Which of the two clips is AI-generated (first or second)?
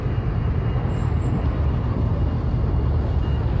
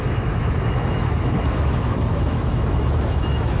second